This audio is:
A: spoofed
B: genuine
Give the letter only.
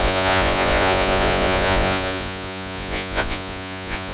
A